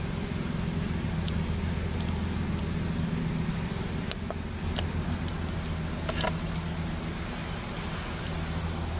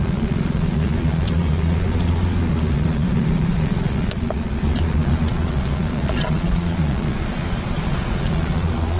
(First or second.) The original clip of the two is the first